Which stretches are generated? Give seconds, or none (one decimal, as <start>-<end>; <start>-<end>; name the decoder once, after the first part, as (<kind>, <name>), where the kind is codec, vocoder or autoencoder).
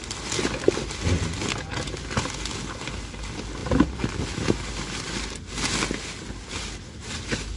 none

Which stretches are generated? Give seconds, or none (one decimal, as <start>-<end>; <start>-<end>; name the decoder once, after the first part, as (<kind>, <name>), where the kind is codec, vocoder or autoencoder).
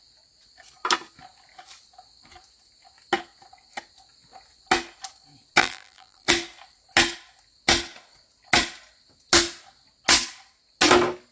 5.6-6.3 (vocoder, BigVGAN v2)